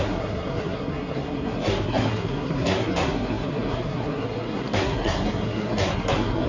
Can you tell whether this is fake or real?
fake